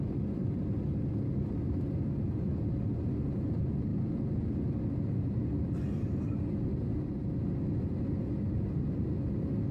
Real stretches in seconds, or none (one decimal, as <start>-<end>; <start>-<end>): 0.0-9.7